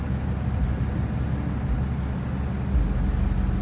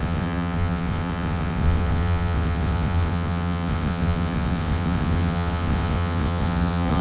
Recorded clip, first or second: first